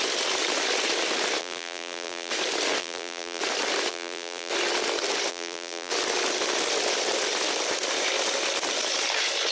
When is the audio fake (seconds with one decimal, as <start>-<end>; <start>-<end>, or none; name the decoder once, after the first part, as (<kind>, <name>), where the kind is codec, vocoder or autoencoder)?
1.4-2.3 (vocoder, BigVGAN v2); 2.8-3.4; 3.9-4.5; 5.3-5.9